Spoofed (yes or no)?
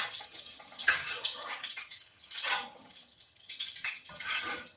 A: yes